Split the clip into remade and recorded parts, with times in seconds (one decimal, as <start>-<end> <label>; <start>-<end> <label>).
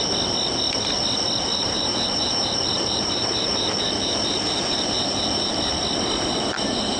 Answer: 0.0-1.5 recorded; 1.5-5.7 remade; 5.7-7.0 recorded